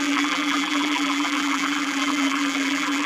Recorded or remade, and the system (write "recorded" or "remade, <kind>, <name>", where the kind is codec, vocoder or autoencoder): remade, vocoder, BigVGAN v2